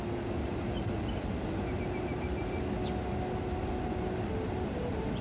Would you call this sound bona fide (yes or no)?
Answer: yes